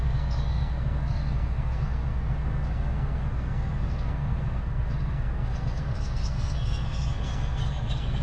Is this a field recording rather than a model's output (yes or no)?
no